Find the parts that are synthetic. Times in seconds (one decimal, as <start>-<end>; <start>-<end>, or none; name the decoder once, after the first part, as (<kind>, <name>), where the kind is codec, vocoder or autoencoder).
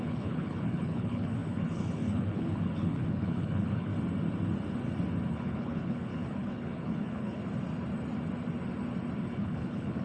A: 0.0-3.9 (codec, HILCodec); 5.3-7.4; 9.2-10.0